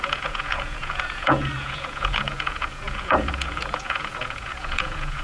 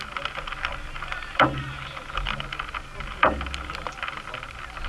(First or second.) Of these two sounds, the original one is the second